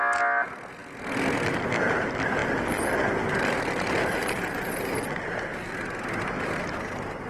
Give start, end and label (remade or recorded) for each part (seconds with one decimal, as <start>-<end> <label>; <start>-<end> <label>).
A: 0.0-7.3 recorded